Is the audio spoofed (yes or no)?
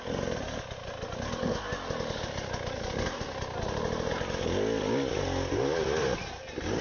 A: no